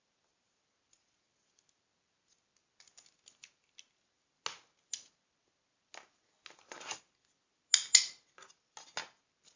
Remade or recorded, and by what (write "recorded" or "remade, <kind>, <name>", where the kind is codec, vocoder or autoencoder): recorded